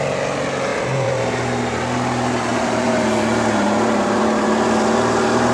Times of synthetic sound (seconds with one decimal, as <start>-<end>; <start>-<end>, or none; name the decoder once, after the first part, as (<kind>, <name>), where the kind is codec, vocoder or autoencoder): 0.7-1.8 (vocoder, BigVGAN v2); 2.5-4.2